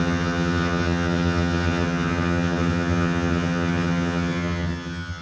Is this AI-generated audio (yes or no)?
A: yes